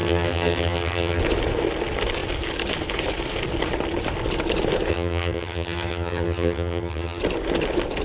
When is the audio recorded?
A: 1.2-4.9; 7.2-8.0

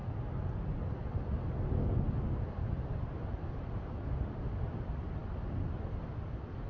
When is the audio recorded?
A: 0.0-6.7

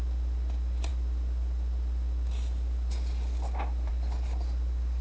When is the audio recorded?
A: 0.0-5.0

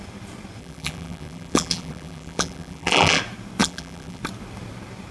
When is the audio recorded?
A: 0.0-0.6; 3.2-3.6; 4.2-5.1

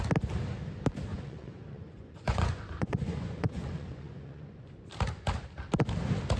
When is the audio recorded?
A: 0.0-1.1; 4.9-6.4